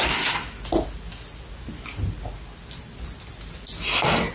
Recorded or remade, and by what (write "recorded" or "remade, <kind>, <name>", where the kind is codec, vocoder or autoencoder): recorded